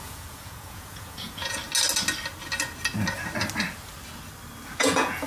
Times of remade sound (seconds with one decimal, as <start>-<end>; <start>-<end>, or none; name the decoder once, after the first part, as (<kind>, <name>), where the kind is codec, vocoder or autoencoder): 0.0-1.6 (vocoder, Vocos); 4.8-5.3